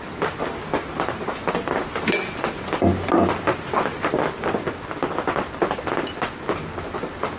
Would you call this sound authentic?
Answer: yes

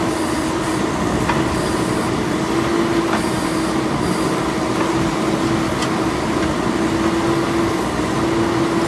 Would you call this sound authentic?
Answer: yes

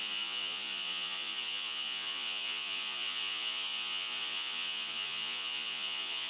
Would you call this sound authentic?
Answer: no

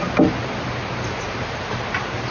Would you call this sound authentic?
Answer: yes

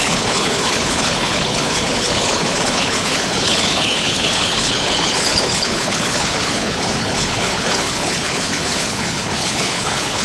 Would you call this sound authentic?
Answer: no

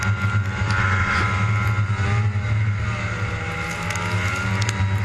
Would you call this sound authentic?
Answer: yes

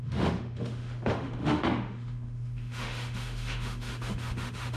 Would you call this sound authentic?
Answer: no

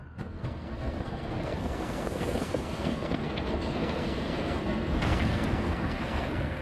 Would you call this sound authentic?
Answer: no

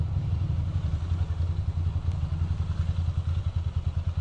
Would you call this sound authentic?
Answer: yes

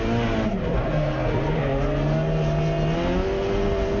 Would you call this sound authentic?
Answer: yes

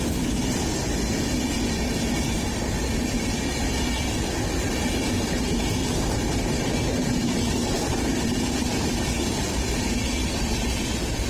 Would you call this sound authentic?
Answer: yes